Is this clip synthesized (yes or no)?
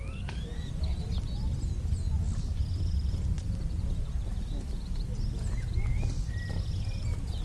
no